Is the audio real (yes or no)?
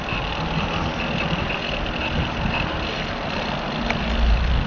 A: yes